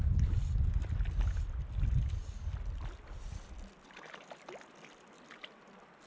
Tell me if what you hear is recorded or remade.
recorded